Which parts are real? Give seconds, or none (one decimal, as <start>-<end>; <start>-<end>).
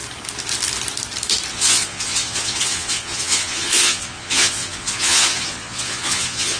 0.0-1.5